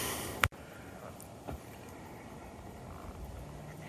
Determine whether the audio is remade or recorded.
remade